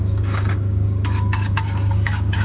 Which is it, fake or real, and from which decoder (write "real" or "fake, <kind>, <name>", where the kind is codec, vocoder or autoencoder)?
fake, codec, DAC